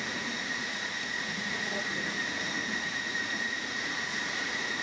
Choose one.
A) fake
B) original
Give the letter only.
A